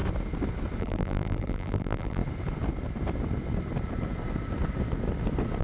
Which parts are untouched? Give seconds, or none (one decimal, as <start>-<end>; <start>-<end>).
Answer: 0.0-0.8; 2.2-5.6